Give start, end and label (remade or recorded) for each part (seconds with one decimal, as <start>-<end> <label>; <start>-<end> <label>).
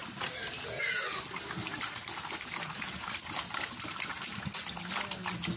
0.0-5.6 recorded